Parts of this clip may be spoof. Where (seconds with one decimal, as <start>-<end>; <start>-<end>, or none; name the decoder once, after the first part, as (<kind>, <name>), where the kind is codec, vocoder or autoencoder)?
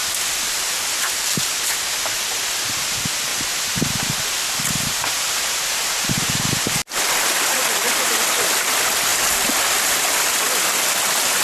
1.0-9.1 (vocoder, BigVGAN v2); 9.9-11.4